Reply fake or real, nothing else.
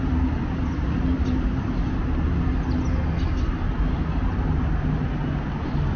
real